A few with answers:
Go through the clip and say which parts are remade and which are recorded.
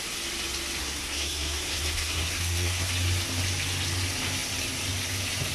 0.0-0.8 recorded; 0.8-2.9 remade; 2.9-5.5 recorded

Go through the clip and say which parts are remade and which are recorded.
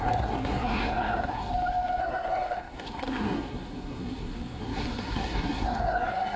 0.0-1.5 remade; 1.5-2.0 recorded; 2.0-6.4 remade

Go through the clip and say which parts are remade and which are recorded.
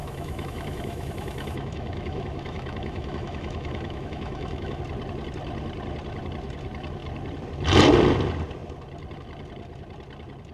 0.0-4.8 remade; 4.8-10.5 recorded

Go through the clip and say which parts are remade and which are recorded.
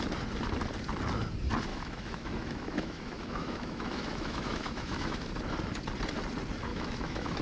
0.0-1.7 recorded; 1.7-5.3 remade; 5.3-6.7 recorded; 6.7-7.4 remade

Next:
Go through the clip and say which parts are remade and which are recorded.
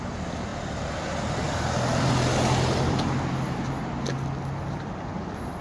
0.0-5.6 recorded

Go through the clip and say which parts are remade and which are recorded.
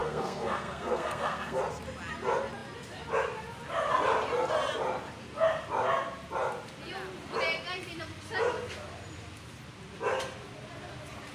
0.0-1.6 remade; 1.6-11.3 recorded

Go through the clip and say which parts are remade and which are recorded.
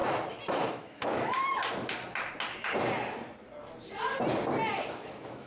0.0-0.7 recorded; 0.7-1.6 remade; 1.6-4.9 recorded; 4.9-5.5 remade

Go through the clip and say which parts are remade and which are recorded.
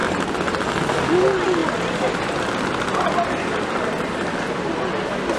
0.0-5.4 recorded